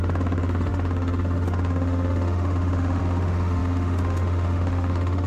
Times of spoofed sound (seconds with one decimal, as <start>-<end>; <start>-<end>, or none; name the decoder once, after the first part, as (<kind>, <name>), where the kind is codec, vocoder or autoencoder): 0.0-5.3 (autoencoder, DAC-VAE)

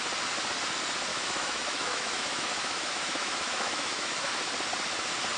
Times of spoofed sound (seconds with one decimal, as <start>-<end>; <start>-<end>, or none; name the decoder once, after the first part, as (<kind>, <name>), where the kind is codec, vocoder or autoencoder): 1.1-4.3 (autoencoder, DAC-VAE)

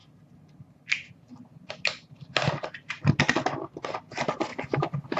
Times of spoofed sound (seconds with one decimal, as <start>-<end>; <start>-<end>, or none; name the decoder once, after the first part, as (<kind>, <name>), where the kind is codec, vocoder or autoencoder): none

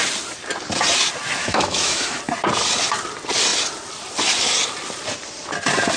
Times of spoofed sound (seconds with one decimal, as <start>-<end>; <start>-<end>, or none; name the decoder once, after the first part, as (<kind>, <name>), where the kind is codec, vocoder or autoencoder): 1.4-2.2 (autoencoder, DAC-VAE)

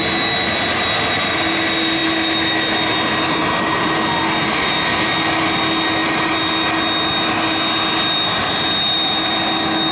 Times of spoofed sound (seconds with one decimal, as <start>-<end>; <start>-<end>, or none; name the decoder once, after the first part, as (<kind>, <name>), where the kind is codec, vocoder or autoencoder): none

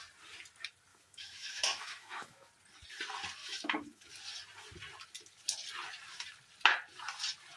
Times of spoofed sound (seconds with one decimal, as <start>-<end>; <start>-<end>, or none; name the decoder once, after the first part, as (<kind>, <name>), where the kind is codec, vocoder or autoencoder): 0.9-2.5 (autoencoder, DAC-VAE); 3.4-4.1

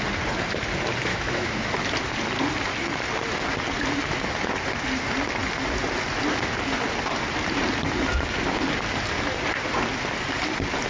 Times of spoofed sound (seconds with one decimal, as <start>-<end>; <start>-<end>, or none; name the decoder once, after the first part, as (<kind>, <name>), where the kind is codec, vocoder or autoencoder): 1.1-1.7 (autoencoder, DAC-VAE)